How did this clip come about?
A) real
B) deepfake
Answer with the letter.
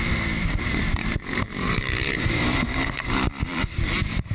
B